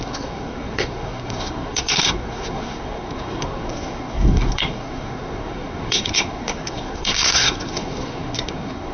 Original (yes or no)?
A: no